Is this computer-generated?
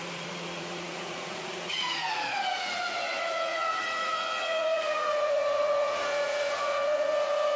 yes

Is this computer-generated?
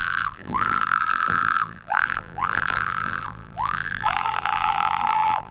yes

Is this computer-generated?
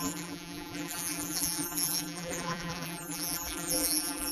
yes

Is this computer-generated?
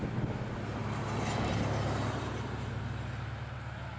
no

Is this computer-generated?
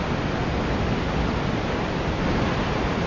no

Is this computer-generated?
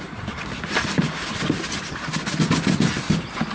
no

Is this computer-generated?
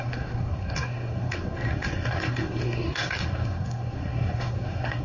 yes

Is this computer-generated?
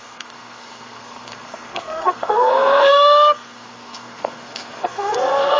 yes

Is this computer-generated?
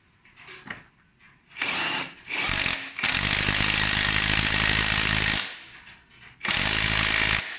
no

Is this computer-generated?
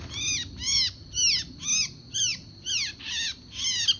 no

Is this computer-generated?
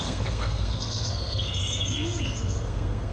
yes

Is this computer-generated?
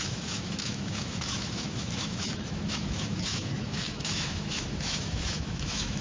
yes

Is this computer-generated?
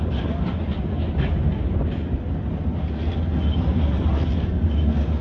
no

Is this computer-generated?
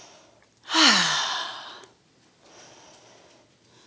no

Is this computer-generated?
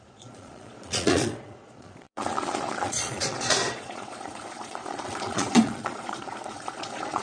yes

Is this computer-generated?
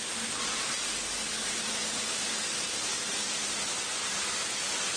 no